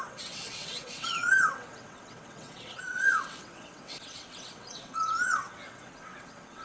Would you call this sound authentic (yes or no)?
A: no